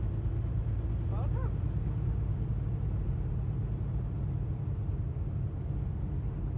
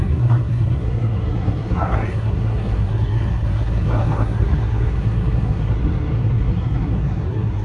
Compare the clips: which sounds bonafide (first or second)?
first